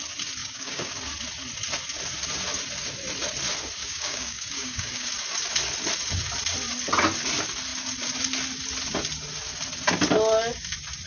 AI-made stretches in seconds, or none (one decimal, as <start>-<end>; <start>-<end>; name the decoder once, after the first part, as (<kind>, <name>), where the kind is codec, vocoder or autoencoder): 0.4-0.9 (codec, DAC); 3.8-5.1

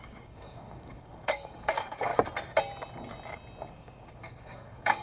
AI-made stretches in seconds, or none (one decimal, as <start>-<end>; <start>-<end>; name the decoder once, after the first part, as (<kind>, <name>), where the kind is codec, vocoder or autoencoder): 0.0-2.1 (codec, DAC); 3.7-5.0